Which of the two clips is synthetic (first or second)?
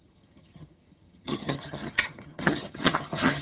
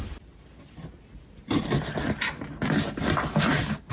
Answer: first